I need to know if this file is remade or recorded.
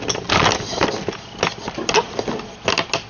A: recorded